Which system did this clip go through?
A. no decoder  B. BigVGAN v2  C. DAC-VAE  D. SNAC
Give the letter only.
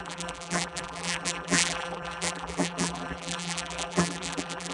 B